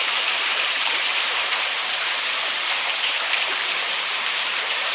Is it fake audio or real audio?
fake